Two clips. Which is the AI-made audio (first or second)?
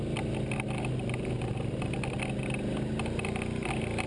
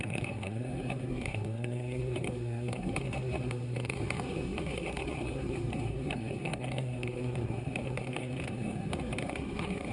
second